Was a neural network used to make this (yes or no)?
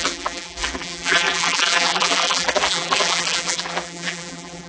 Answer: yes